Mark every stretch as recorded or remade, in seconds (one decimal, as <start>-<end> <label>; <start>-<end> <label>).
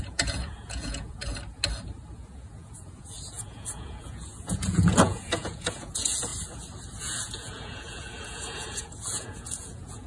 0.0-1.3 remade; 1.3-2.1 recorded; 2.1-6.3 remade; 6.3-7.0 recorded; 7.0-10.1 remade